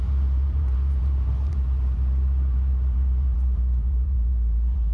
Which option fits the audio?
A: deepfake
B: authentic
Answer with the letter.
A